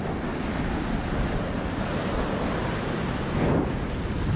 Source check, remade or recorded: recorded